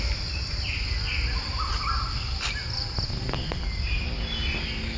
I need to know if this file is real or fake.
real